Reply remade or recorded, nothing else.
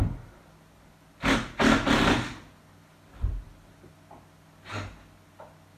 recorded